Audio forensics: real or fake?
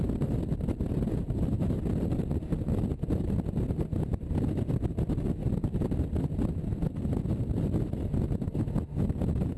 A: real